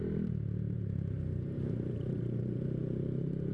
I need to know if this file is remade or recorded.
remade